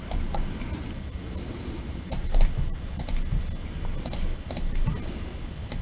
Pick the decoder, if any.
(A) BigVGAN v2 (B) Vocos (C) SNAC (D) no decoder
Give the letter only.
D